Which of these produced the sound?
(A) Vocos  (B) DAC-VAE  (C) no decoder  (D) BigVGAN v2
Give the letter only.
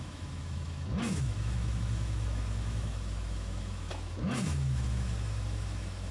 B